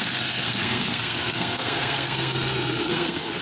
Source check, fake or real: fake